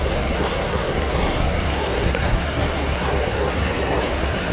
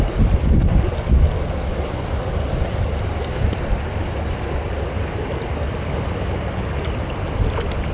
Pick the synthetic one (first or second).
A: first